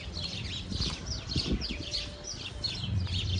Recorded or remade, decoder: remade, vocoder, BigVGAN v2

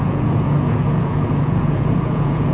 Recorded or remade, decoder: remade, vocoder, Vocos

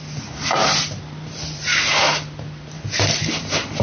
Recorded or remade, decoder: recorded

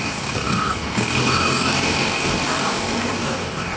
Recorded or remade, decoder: remade, codec, DAC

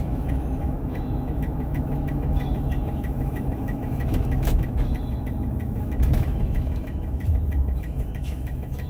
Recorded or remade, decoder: remade, autoencoder, DAC-VAE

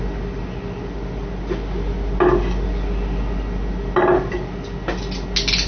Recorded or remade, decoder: recorded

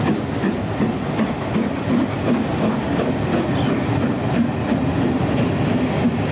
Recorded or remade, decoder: recorded